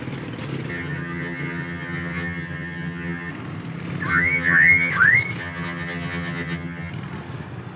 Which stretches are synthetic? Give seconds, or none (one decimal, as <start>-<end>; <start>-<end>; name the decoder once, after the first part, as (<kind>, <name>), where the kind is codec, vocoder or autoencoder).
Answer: 0.7-3.3 (vocoder, HiFi-GAN); 4.1-4.9; 5.4-6.9